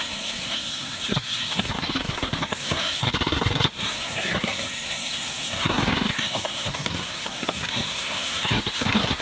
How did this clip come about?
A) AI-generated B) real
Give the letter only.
A